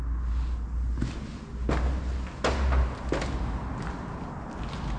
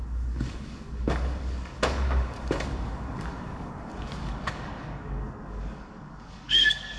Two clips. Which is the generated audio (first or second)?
second